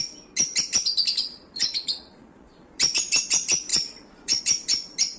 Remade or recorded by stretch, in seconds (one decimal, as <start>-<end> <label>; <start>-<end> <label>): 0.0-1.2 recorded; 1.2-2.8 remade; 2.8-3.7 recorded; 3.7-4.4 remade; 4.4-5.2 recorded